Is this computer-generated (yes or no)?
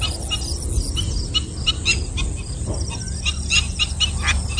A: no